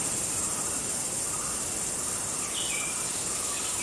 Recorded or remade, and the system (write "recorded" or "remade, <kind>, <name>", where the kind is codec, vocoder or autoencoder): recorded